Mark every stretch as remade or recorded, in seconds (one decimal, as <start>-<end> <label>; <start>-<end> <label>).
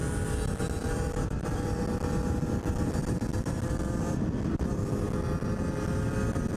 0.0-0.8 recorded; 0.8-1.8 remade; 1.8-3.3 recorded; 3.3-4.9 remade; 4.9-6.6 recorded